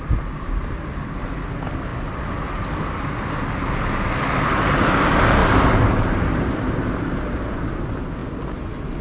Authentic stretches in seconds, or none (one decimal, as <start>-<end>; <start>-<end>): 0.0-5.4; 7.8-9.0